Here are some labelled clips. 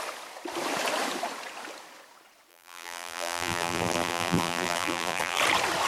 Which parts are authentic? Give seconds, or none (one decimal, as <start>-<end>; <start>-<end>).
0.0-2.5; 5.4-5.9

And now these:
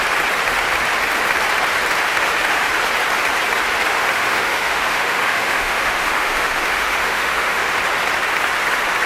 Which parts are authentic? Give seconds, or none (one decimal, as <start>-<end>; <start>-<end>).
0.0-2.1; 2.7-4.1; 7.8-9.1

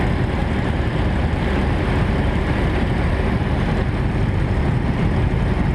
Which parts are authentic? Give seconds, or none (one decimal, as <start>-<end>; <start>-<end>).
0.0-0.4; 3.1-4.6; 5.3-5.7

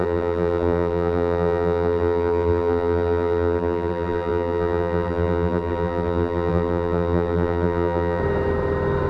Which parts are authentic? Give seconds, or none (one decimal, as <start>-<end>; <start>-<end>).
8.2-9.1